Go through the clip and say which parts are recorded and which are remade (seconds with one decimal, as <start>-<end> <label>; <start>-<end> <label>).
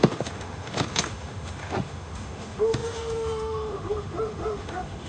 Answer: 0.0-5.1 remade